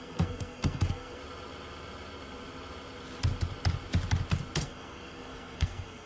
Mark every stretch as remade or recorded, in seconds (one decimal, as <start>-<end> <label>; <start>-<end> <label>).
0.0-1.2 remade; 1.2-4.6 recorded; 4.6-6.1 remade